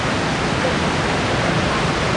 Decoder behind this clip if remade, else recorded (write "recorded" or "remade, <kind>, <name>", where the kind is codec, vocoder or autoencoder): recorded